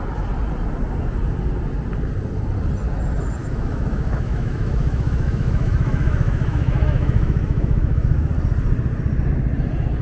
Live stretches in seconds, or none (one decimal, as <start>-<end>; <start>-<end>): 0.0-3.4; 8.3-10.0